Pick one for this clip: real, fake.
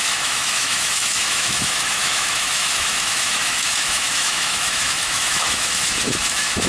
fake